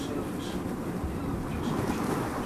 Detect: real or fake real